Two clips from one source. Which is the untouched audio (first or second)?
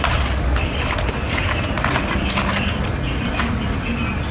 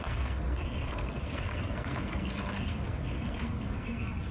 first